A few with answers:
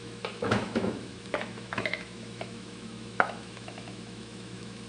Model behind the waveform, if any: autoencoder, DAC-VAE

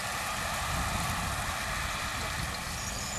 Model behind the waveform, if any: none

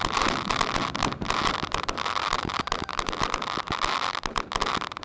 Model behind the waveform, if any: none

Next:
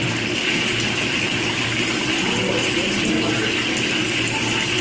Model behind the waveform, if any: none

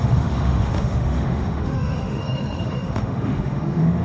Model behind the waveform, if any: autoencoder, DAC-VAE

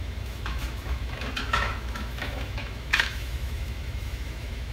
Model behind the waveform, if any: autoencoder, DAC-VAE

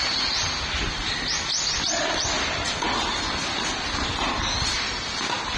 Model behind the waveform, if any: none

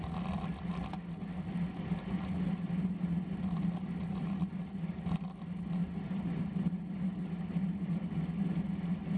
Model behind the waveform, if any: none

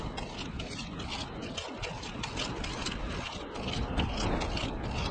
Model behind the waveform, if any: none